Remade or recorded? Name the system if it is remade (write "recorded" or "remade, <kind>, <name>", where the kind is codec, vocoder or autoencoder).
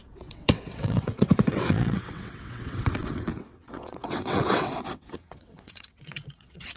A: remade, vocoder, WaveNeXt